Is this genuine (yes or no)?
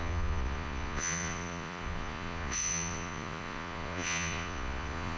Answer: no